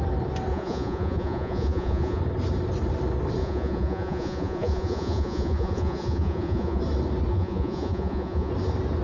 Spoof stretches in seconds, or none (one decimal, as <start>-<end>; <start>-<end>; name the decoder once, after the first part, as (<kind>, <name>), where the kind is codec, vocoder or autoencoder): 0.5-2.2 (vocoder, Vocos); 3.4-6.8; 7.3-8.5